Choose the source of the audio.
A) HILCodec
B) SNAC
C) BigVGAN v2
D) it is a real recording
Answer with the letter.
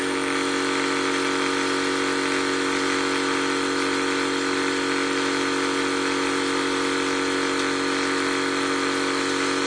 D